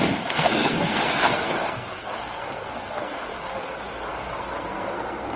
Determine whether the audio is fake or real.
fake